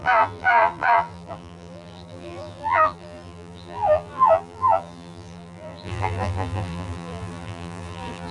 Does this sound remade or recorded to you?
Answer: remade